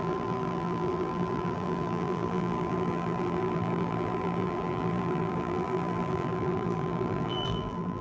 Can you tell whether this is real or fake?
fake